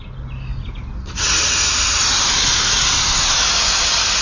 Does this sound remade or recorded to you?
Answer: recorded